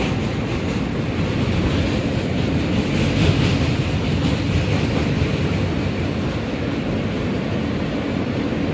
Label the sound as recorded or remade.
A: recorded